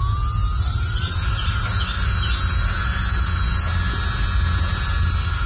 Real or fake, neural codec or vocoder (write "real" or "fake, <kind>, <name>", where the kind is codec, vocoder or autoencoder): real